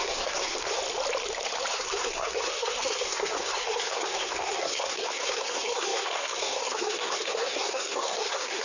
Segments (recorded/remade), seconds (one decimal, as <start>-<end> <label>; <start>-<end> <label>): 0.0-0.8 remade; 0.8-1.7 recorded; 1.7-8.6 remade